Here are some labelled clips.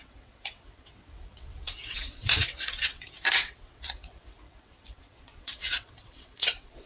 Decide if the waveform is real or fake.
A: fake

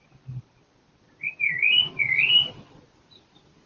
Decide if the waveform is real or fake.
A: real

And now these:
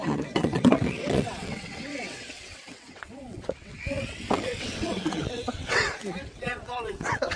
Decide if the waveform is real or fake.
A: fake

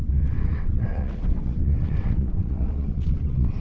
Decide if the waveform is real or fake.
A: fake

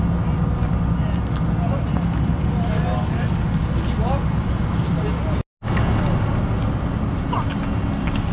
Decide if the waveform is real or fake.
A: real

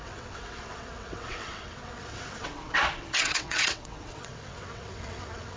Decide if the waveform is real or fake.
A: fake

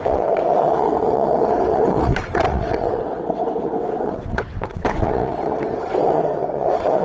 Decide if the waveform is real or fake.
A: fake